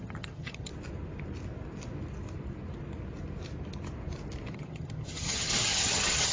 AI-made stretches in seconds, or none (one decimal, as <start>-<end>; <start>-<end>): 0.0-0.7; 4.5-6.3